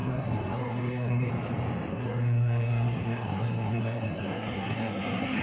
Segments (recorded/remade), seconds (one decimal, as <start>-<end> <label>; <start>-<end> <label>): 0.0-1.3 remade; 1.3-1.9 recorded; 1.9-5.4 remade